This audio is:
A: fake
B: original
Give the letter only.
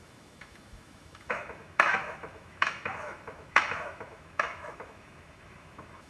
A